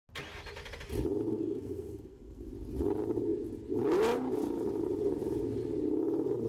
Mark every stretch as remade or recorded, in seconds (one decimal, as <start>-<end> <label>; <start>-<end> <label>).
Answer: 0.0-1.3 recorded; 1.3-2.5 remade; 2.5-6.5 recorded